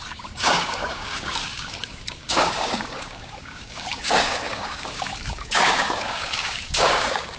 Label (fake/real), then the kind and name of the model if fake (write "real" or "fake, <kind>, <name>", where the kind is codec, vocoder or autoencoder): fake, codec, DAC